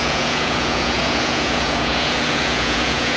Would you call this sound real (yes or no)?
no